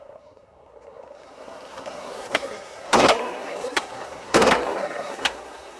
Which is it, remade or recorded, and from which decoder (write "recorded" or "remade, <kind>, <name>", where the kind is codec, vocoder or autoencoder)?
remade, codec, SNAC